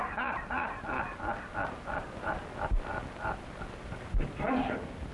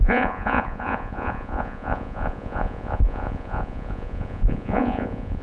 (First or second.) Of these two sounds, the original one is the first